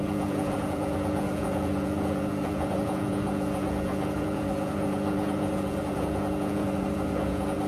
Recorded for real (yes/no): no